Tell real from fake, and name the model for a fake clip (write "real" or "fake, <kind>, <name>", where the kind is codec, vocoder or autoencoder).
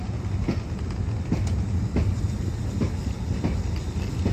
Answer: real